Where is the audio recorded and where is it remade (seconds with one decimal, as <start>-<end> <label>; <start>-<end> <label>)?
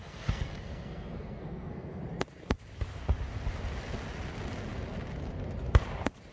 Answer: 0.0-2.0 remade; 2.0-6.3 recorded